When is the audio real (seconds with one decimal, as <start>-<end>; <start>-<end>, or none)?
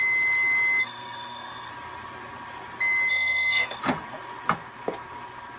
0.0-0.8; 1.7-3.1; 3.8-5.6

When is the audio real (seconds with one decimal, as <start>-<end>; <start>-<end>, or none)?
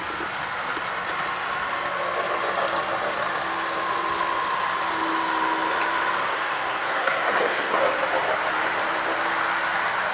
0.0-6.3; 7.8-10.1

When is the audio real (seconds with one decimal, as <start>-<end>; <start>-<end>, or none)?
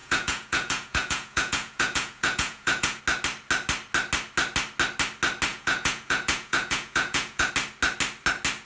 3.0-5.5; 7.5-8.7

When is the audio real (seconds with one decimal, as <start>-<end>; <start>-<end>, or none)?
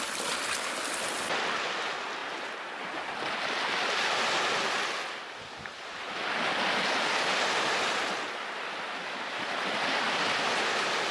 0.0-2.2; 2.9-11.1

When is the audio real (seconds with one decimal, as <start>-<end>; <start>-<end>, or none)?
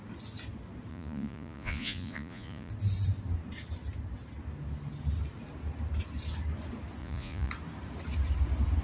0.0-0.9; 2.7-7.0; 7.5-8.8